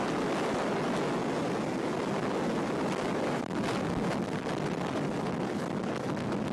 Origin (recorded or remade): recorded